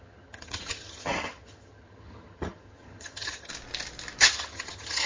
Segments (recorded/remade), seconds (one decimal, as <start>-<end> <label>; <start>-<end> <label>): 0.0-3.5 remade; 3.5-4.2 recorded; 4.2-5.1 remade